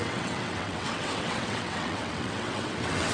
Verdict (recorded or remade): remade